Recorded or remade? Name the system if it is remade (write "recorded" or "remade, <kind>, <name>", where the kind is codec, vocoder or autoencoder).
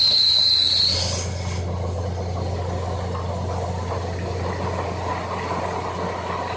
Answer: recorded